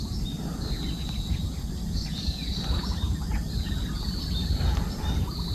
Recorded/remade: recorded